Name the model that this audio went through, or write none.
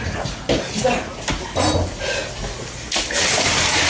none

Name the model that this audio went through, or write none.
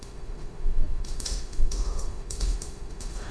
autoencoder, DAC-VAE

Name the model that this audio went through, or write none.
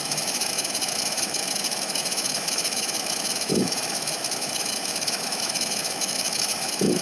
autoencoder, DAC-VAE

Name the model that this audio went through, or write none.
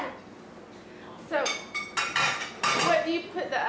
none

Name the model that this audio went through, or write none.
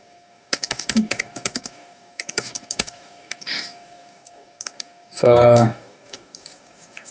codec, DAC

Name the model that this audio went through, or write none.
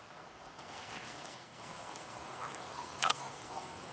codec, SNAC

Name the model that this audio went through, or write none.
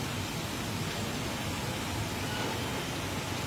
none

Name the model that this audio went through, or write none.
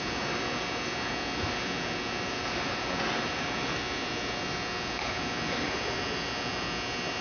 none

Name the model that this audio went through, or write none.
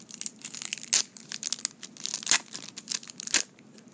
none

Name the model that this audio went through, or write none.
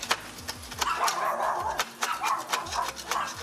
none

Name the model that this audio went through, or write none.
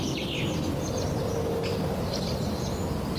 none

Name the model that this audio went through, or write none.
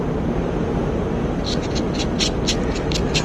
none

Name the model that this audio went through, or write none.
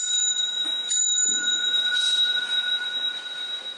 vocoder, Vocos